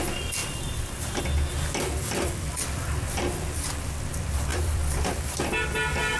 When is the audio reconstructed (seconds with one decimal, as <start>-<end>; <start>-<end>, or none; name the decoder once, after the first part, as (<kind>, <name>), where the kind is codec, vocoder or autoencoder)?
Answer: 0.4-1.2 (vocoder, BigVGAN v2); 4.5-5.4